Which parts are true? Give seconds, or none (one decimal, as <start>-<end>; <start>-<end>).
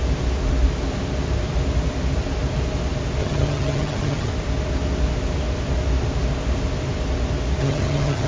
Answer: 0.0-3.2; 4.3-7.6